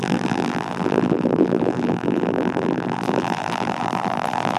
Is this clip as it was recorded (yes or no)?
no